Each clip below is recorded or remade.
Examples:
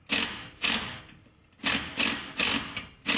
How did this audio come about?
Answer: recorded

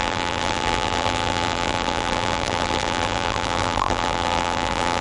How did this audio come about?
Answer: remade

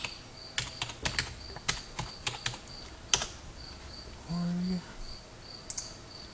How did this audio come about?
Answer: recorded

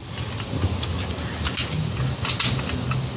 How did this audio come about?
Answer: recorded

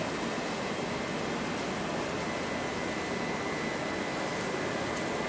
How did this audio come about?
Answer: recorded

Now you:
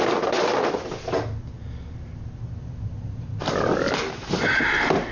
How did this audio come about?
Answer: recorded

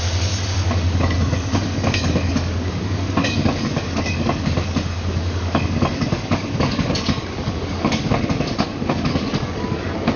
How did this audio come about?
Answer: remade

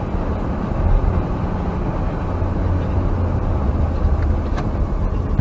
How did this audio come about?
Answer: recorded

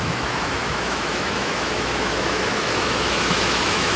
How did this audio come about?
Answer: remade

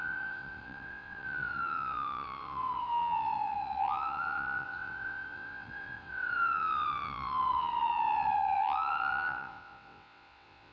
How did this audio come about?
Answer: remade